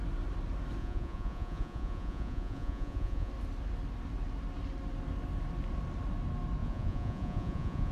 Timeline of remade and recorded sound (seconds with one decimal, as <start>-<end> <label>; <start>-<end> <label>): 0.0-0.8 recorded; 0.8-3.3 remade; 3.3-6.6 recorded; 6.6-7.9 remade